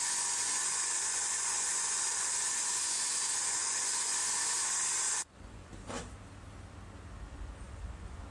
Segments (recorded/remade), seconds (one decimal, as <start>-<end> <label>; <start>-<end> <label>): 0.0-4.1 remade; 4.1-5.1 recorded; 5.1-5.7 remade; 5.7-7.3 recorded; 7.3-8.3 remade